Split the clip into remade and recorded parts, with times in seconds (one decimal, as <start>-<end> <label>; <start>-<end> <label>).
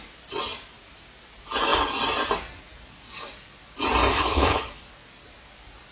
0.0-4.1 recorded; 4.1-4.7 remade; 4.7-5.9 recorded